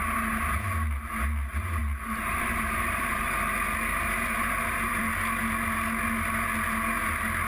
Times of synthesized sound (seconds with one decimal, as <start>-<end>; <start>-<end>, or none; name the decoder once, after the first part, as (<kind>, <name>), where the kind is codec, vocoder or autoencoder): 1.8-3.3 (vocoder, BigVGAN v2); 3.9-5.2